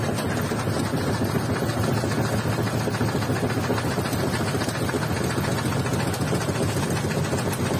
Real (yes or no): yes